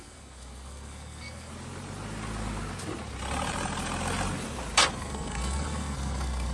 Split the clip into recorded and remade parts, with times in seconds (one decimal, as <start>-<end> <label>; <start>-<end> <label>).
0.0-1.5 remade; 1.5-4.9 recorded; 4.9-6.5 remade